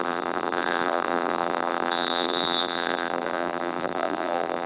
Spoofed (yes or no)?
yes